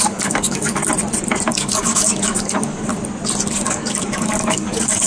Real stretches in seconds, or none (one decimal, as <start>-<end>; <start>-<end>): 0.8-1.5; 2.9-3.7